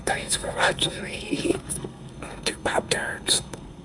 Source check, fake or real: fake